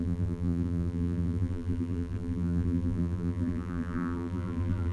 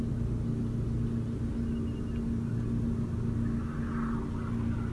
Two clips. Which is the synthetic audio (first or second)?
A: first